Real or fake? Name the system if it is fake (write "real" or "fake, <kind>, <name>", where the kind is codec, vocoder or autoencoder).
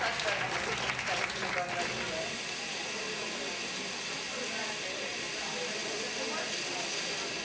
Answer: real